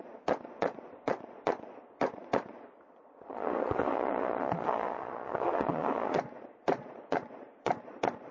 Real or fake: fake